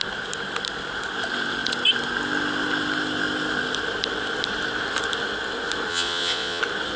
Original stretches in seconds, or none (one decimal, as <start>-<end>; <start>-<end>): 0.0-5.9; 6.6-7.0